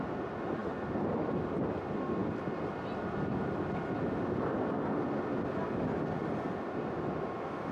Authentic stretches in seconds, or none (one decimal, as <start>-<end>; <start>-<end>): 0.0-7.7